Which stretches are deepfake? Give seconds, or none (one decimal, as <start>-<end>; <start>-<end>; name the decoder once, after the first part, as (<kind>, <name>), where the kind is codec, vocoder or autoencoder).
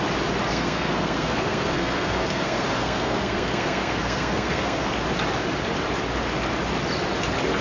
0.5-4.8 (codec, SNAC)